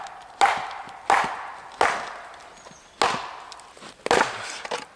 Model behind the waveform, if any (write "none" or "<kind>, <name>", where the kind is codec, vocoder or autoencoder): none